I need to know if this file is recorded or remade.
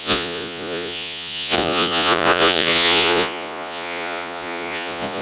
remade